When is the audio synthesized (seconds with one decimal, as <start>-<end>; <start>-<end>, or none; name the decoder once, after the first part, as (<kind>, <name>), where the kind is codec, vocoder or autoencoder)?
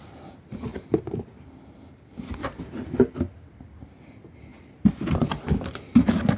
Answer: 4.5-6.0 (vocoder, BigVGAN v2)